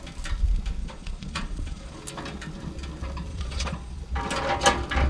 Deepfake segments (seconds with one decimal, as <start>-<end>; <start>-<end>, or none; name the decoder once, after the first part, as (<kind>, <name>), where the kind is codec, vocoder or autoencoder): 0.8-2.0 (vocoder, Vocos); 3.3-4.0